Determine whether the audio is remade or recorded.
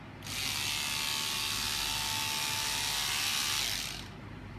recorded